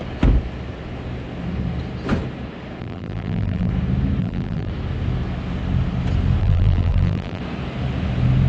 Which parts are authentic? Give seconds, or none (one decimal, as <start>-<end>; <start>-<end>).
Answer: 0.0-2.8; 3.7-4.2; 4.7-6.4; 7.4-8.5